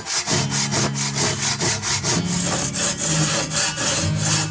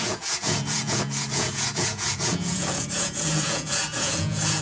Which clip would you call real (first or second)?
first